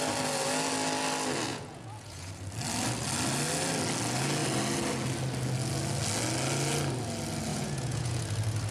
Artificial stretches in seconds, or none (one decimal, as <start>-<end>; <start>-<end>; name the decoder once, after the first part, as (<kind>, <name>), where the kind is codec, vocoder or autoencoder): 1.5-2.3 (vocoder, Vocos); 7.5-8.2